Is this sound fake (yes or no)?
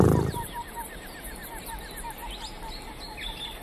no